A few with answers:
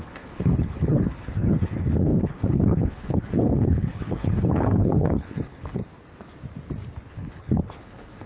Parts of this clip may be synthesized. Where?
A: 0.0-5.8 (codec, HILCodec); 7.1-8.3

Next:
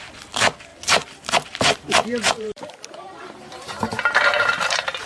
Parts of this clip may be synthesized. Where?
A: 2.0-5.1 (vocoder, BigVGAN v2)

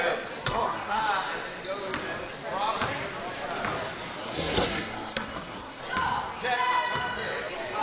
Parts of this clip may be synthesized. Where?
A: 0.4-1.0 (codec, SNAC); 4.2-5.8

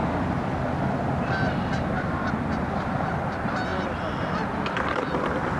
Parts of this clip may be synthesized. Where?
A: 2.5-5.6 (vocoder, BigVGAN v2)